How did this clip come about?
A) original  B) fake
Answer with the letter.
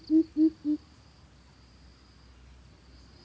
A